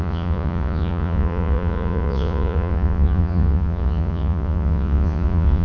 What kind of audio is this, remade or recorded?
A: remade